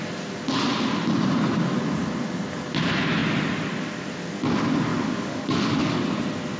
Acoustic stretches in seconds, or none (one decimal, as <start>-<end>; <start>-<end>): 0.0-4.9; 6.0-6.6